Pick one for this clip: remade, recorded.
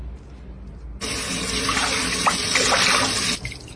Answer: recorded